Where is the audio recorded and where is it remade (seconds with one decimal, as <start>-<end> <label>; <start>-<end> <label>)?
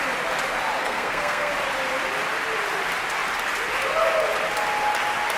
0.0-0.8 recorded; 0.8-1.5 remade; 1.5-5.4 recorded